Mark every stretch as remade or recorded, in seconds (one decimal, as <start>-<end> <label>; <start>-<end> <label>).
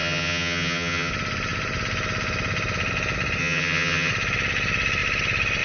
0.0-1.1 remade; 1.1-3.4 recorded; 3.4-4.1 remade; 4.1-5.6 recorded